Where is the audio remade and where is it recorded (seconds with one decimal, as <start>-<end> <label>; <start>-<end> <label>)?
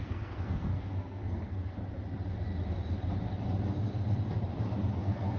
0.0-1.8 remade; 1.8-5.0 recorded; 5.0-5.4 remade